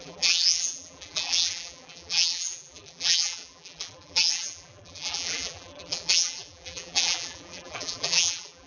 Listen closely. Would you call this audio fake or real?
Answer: fake